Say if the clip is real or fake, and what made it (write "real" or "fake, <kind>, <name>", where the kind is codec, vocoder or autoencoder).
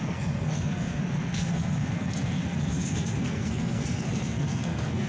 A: fake, codec, SNAC